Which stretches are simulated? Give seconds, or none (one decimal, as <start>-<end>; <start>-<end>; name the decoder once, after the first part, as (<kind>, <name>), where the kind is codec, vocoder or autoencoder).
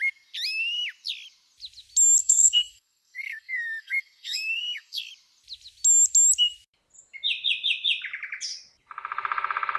2.2-5.1 (codec, SNAC)